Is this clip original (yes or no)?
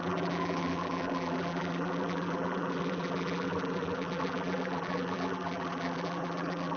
no